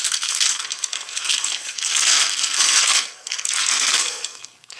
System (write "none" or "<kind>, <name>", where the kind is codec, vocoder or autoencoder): codec, SNAC